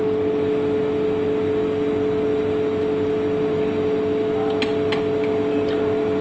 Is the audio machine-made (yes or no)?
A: no